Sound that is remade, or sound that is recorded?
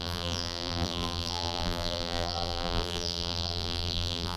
remade